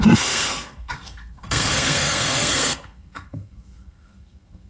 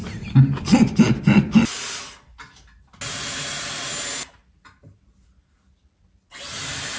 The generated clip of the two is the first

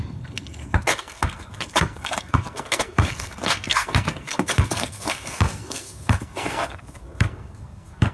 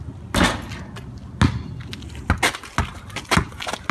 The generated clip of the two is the first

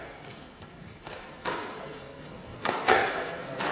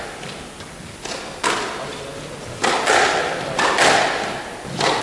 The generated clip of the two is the first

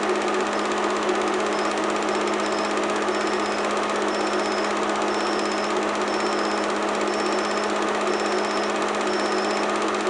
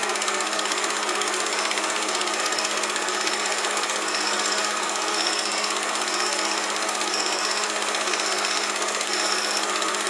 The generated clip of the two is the second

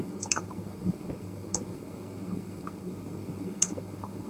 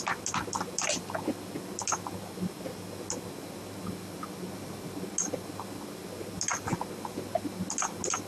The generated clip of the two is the first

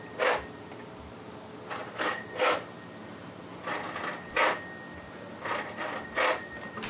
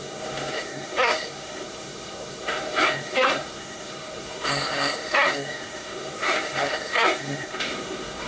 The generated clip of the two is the second